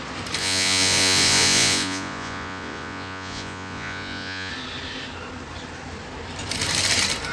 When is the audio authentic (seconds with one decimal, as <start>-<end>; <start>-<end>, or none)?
0.0-0.4; 4.5-7.3